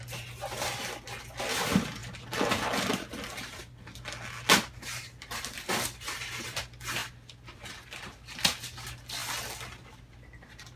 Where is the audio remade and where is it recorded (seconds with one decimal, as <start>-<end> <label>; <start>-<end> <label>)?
0.0-10.8 recorded